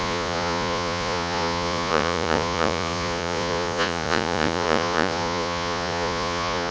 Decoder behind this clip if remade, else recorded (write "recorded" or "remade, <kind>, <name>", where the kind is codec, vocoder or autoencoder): remade, vocoder, Vocos